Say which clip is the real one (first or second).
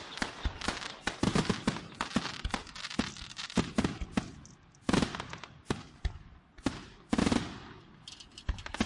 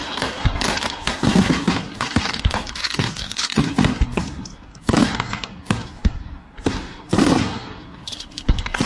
first